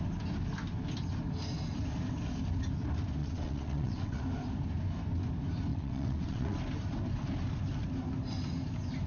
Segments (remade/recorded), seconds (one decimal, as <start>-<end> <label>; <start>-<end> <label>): 0.0-3.2 recorded; 3.2-4.2 remade; 4.2-5.7 recorded; 5.7-6.6 remade; 6.6-9.1 recorded